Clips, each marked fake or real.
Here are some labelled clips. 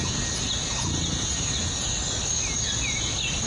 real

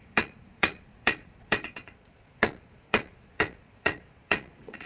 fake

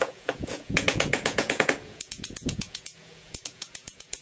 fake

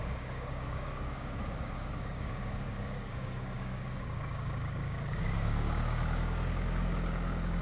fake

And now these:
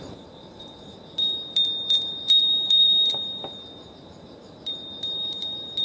fake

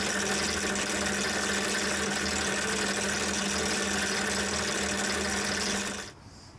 real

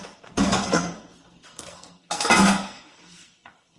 fake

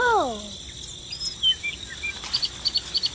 real